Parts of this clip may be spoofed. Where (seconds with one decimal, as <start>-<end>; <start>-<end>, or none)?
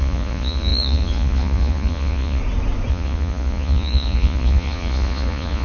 0.0-2.4; 2.9-5.6